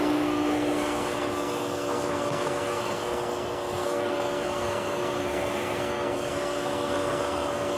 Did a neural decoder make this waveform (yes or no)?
yes